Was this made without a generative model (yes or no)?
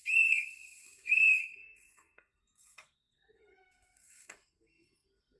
no